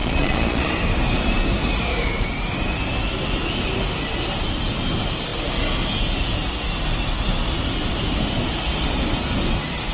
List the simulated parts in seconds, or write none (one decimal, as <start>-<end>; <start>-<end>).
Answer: 0.0-0.7